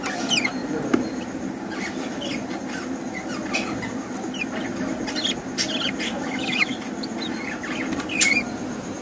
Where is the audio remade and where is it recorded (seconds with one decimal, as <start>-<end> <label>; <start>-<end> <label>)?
0.0-6.2 recorded; 6.2-6.7 remade; 6.7-9.0 recorded